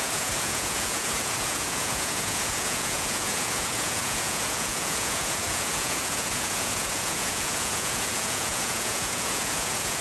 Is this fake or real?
fake